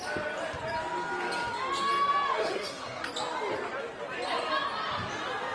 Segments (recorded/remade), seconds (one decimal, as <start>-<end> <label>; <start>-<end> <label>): 0.0-2.4 recorded; 2.4-3.0 remade; 3.0-5.5 recorded